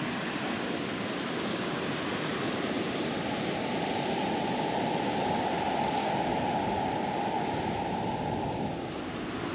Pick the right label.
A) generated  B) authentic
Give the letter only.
B